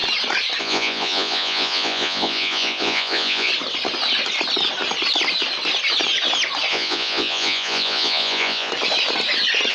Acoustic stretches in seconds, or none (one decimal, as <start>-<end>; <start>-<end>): 0.0-0.6; 3.5-6.7; 8.7-9.7